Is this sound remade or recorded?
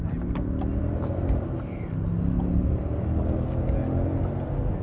recorded